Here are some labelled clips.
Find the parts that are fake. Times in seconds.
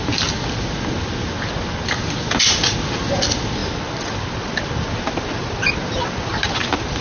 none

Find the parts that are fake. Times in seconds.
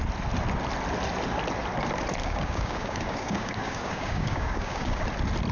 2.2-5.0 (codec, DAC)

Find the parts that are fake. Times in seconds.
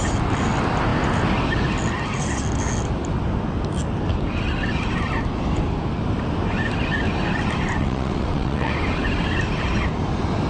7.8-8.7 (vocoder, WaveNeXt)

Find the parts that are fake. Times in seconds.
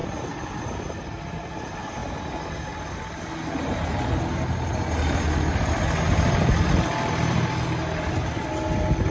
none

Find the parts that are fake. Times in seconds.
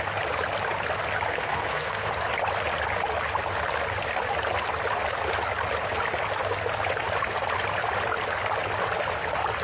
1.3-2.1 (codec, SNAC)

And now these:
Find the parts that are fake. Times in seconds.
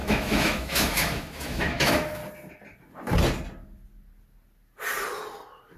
0.0-2.2 (autoencoder, DAC-VAE)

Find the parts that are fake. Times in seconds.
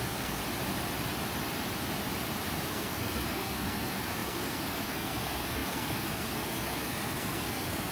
0.0-0.4 (codec, SNAC); 2.7-7.9